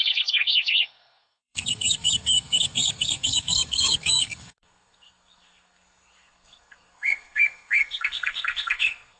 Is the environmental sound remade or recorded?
remade